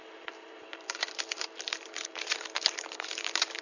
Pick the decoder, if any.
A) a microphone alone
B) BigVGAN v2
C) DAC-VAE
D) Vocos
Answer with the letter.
B